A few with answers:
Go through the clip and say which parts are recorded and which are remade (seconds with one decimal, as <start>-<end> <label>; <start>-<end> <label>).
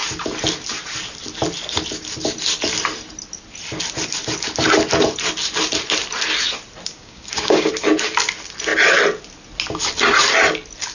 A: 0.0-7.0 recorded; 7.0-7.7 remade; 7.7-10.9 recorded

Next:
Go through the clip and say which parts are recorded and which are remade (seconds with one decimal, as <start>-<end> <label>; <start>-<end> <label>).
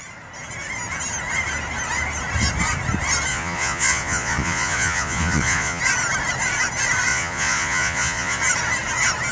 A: 0.0-3.3 recorded; 3.3-5.8 remade; 5.8-7.1 recorded; 7.1-8.4 remade; 8.4-9.3 recorded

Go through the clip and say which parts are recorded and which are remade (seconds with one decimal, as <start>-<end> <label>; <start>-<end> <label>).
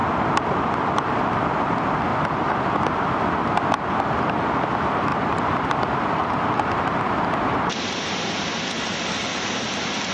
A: 0.0-2.1 recorded; 2.1-2.8 remade; 2.8-5.1 recorded; 5.1-8.6 remade; 8.6-10.1 recorded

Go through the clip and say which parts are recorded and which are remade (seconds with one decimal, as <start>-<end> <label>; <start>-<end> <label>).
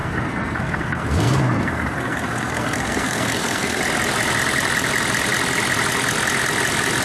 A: 0.0-3.8 remade; 3.8-7.0 recorded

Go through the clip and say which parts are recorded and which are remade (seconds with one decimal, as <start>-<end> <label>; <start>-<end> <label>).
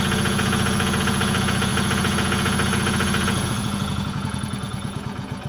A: 0.0-5.5 remade